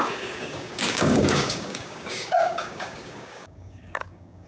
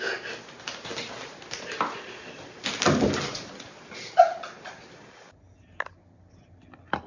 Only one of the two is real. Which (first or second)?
second